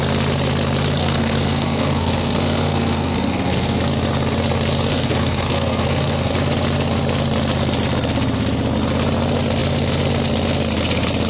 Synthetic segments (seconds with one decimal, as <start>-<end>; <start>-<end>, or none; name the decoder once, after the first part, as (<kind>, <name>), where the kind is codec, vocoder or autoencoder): 1.0-3.8 (codec, SNAC); 4.9-6.3